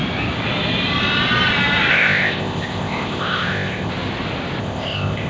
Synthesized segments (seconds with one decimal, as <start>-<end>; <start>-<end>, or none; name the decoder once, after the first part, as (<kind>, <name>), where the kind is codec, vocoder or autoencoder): 1.9-3.9 (codec, ZipCodec); 4.6-5.3